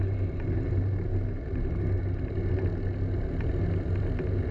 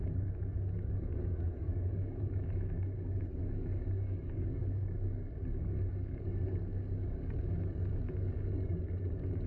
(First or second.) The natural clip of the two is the first